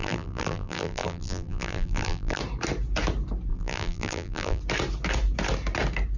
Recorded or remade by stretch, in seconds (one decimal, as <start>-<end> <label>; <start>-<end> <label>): 0.0-2.4 remade; 2.4-3.5 recorded; 3.5-4.6 remade; 4.6-6.2 recorded